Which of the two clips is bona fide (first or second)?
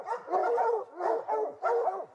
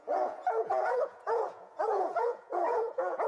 first